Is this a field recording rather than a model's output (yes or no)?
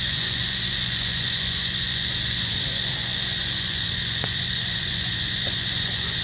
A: no